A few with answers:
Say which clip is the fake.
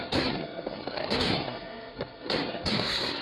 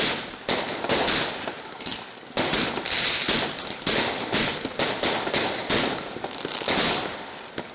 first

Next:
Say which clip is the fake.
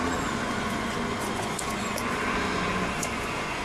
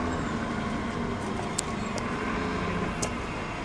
first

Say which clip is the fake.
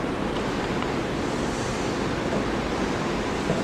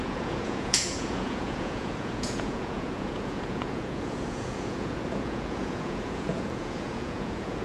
second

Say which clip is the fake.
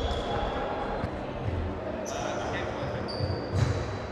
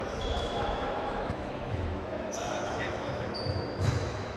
second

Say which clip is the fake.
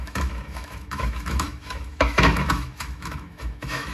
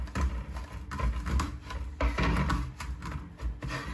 first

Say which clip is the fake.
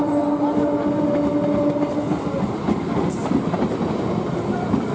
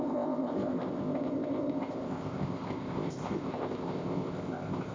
second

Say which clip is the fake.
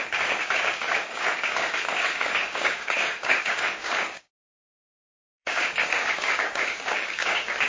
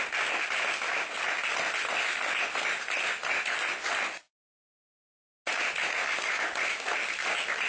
first